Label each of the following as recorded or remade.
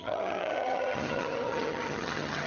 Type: remade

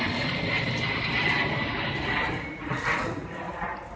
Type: recorded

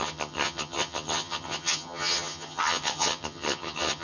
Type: remade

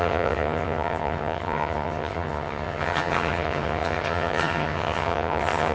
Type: remade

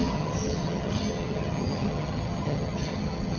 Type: remade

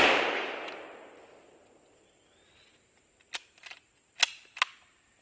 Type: recorded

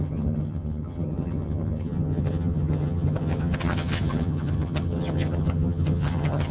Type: remade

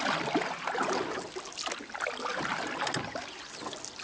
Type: recorded